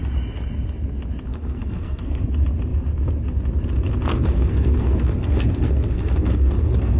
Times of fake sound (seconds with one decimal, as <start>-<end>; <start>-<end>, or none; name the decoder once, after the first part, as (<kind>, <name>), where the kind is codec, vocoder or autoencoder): 1.3-2.2 (codec, SNAC); 4.1-7.0